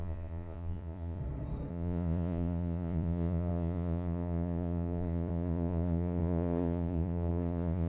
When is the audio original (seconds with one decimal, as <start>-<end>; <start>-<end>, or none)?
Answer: 1.2-1.7